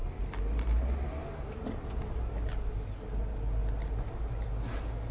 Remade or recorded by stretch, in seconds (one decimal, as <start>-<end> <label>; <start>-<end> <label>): 0.0-5.1 recorded